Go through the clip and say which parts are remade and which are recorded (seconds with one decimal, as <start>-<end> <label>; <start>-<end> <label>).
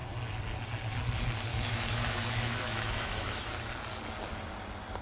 0.0-1.5 recorded; 1.5-3.7 remade; 3.7-5.0 recorded